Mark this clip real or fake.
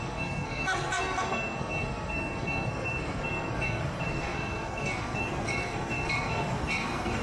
fake